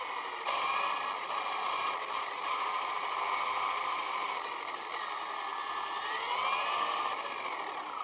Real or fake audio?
real